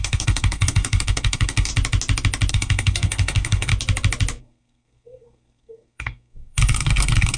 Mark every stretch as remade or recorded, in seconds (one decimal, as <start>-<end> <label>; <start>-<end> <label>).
0.0-1.7 remade; 1.7-2.5 recorded; 2.5-3.7 remade; 3.7-4.4 recorded; 4.4-7.4 remade